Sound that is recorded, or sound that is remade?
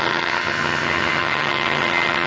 remade